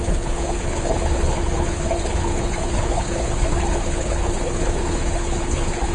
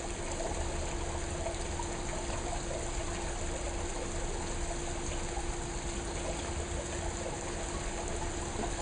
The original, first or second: second